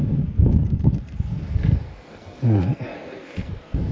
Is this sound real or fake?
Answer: fake